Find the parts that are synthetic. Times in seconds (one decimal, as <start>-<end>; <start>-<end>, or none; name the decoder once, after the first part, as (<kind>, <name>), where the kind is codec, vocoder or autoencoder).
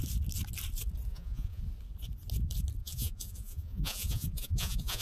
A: 1.1-1.6 (vocoder, Vocos); 2.8-5.0